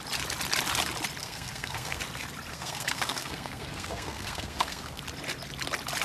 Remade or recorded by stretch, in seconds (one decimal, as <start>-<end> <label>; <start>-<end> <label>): 0.0-1.2 recorded; 1.2-2.0 remade; 2.0-2.5 recorded; 2.5-5.0 remade; 5.0-6.0 recorded